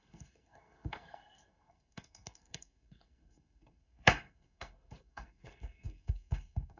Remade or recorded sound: remade